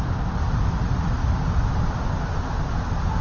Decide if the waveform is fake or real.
real